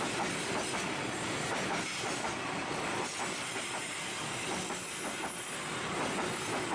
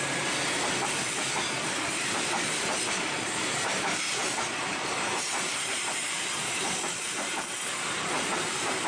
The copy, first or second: second